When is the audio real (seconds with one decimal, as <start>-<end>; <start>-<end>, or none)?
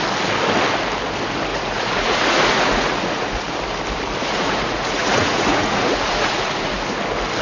0.0-1.5; 3.4-4.2; 6.7-7.4